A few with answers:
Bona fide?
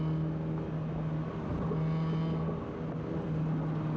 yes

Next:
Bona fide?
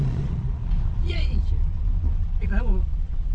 no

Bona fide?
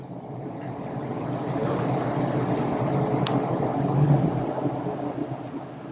yes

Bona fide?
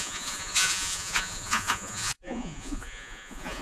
no